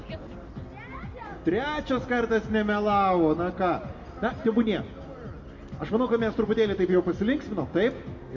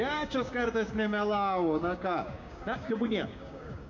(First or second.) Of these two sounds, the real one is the first